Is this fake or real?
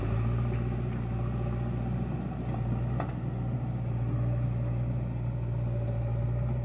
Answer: real